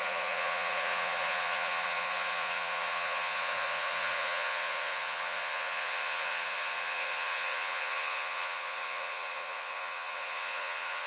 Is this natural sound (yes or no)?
no